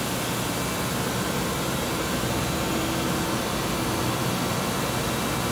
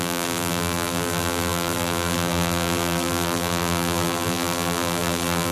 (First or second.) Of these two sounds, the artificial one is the second